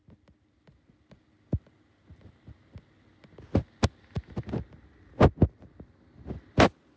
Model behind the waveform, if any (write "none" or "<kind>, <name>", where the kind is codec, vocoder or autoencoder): none